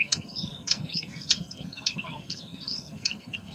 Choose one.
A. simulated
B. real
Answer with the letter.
A